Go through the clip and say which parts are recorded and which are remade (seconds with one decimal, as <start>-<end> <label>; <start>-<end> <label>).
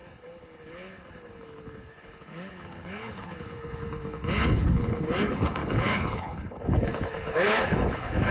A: 0.0-8.3 remade